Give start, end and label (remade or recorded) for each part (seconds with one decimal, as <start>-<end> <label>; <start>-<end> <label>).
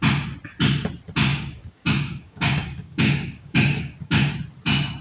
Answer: 0.0-1.3 recorded; 1.3-4.3 remade; 4.3-5.0 recorded